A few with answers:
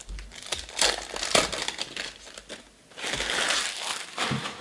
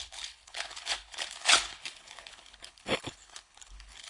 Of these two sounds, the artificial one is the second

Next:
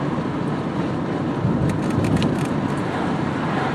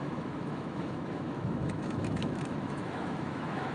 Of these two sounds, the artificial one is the second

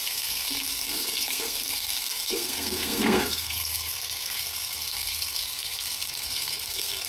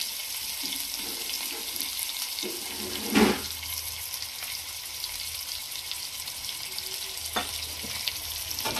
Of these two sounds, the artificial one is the first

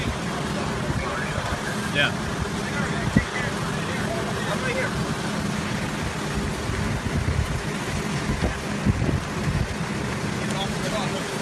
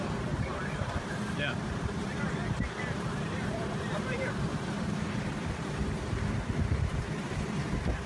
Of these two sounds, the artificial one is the second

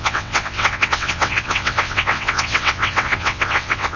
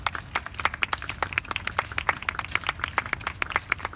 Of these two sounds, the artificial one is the first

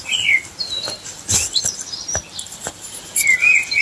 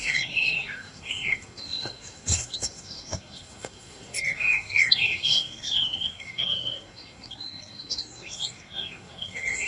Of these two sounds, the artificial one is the second